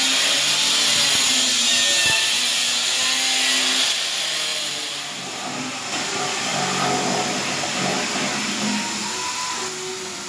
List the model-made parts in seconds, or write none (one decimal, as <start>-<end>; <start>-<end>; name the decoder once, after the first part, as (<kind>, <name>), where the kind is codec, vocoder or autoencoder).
4.5-5.4 (vocoder, BigVGAN v2)